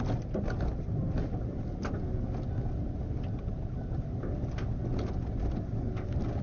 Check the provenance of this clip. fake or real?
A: real